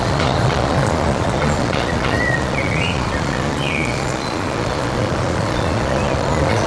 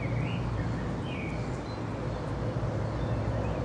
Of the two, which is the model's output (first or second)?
first